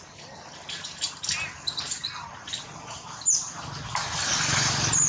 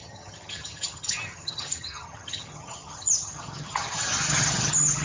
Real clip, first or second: first